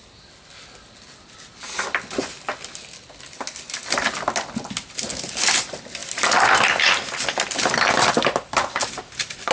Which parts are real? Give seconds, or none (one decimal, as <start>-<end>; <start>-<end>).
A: 0.0-9.5

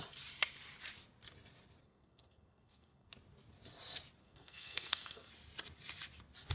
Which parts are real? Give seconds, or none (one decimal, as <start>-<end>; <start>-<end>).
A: 0.0-1.8; 3.1-4.2; 5.3-6.5

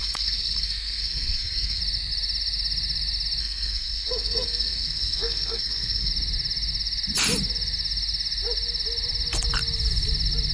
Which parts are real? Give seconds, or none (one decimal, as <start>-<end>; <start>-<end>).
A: 1.8-3.4; 6.1-10.5